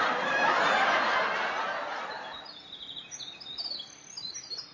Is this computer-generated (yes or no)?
no